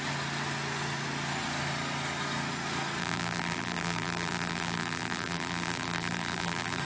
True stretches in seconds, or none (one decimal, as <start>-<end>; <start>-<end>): 0.0-3.0